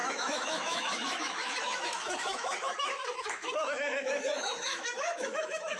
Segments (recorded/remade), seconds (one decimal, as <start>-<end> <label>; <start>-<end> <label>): 0.0-5.8 remade